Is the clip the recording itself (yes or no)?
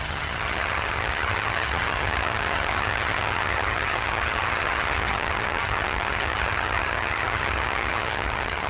no